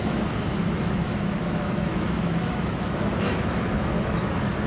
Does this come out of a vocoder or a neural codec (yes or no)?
yes